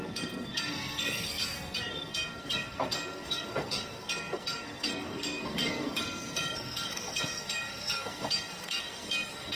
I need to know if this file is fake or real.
fake